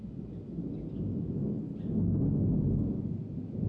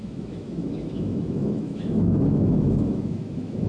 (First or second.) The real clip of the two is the first